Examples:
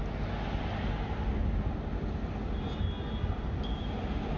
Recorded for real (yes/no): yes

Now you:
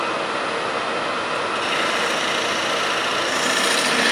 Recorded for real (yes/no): yes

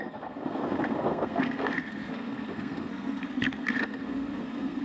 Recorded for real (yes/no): no